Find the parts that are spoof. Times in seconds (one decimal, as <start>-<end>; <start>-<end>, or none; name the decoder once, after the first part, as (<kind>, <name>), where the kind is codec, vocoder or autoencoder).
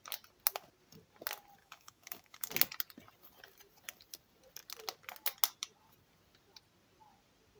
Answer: 1.6-2.5 (autoencoder, DAC-VAE)